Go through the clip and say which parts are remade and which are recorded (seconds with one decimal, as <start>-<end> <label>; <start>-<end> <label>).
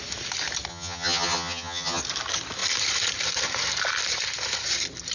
0.0-0.7 recorded; 0.7-2.0 remade; 2.0-5.1 recorded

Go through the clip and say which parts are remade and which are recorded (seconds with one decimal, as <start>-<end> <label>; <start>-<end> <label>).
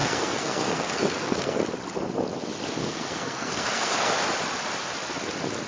0.0-1.6 remade; 1.6-2.8 recorded; 2.8-4.1 remade; 4.1-5.7 recorded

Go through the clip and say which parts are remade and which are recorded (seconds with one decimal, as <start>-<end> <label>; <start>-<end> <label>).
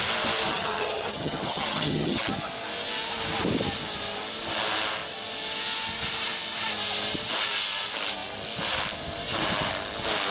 0.0-0.5 recorded; 0.5-2.2 remade; 2.2-10.3 recorded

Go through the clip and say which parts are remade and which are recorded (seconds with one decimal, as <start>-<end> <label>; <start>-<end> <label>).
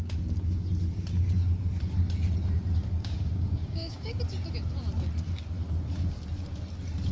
0.0-2.9 recorded; 2.9-4.2 remade; 4.2-7.1 recorded